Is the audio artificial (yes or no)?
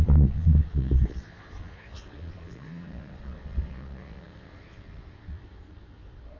yes